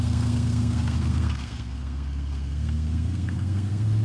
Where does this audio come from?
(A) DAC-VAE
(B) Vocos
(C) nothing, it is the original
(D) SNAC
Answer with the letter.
D